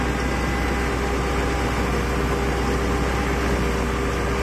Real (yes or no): yes